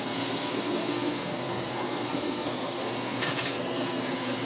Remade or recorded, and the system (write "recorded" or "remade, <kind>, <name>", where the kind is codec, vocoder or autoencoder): remade, codec, SNAC